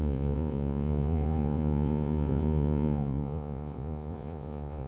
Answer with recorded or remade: remade